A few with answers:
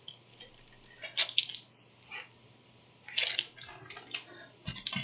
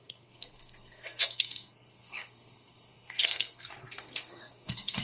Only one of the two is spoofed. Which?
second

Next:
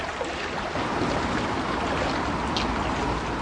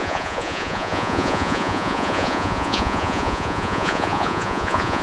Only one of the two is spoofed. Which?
second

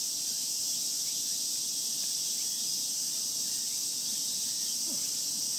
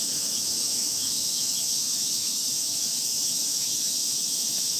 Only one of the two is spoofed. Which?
second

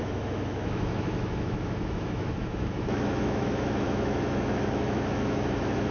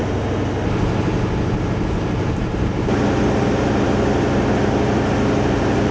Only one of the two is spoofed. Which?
first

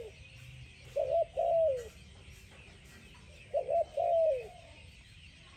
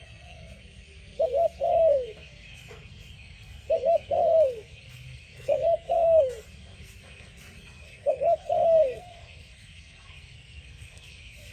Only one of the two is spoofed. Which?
second